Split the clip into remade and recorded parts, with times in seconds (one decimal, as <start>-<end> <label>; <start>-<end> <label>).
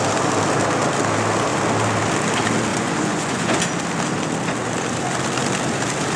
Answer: 0.0-2.7 recorded; 2.7-3.6 remade; 3.6-6.2 recorded